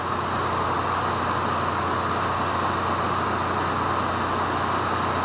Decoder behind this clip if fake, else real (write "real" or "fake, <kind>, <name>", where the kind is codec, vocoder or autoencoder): real